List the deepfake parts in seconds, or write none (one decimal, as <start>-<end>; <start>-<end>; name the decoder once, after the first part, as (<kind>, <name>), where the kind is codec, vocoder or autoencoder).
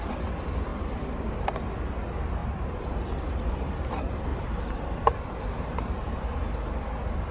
0.7-1.5 (vocoder, BigVGAN v2); 2.4-3.9; 4.3-5.9